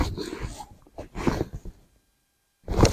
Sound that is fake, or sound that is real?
real